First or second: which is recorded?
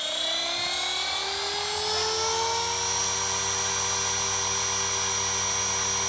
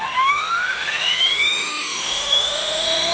first